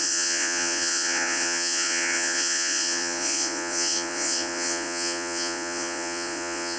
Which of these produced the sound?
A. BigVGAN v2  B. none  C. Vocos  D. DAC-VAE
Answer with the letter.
C